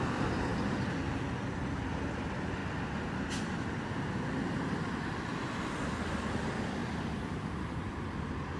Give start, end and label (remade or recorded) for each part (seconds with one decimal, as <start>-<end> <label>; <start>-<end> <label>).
0.0-0.5 remade; 0.5-1.5 recorded; 1.5-2.6 remade; 2.6-5.7 recorded; 5.7-8.6 remade